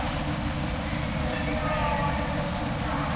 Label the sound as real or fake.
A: real